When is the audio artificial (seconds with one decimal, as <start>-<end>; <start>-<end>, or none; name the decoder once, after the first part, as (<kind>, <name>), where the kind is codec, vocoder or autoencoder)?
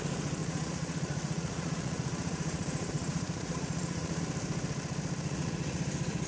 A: 0.4-4.2 (vocoder, Vocos); 5.3-5.8